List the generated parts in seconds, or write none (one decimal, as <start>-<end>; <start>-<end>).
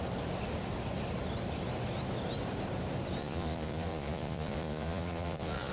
3.2-5.7